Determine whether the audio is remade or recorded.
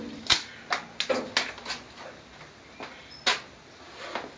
recorded